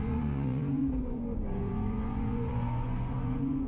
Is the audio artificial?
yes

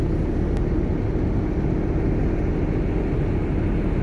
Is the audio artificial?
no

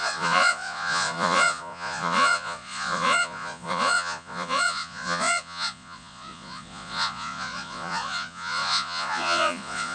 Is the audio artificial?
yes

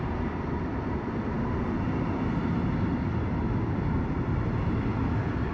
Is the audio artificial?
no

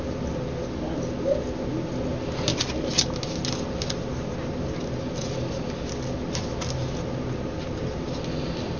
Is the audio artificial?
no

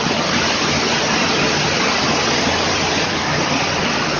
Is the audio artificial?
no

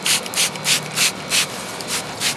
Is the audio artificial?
no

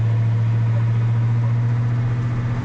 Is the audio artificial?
no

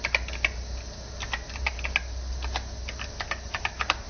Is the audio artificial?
no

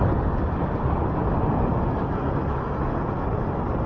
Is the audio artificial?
no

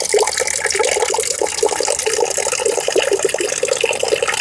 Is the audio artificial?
no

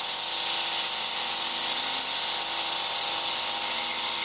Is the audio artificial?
no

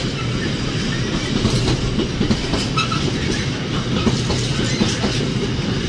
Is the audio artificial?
no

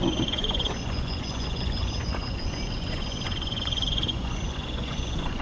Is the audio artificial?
yes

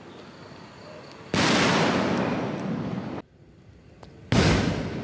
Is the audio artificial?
no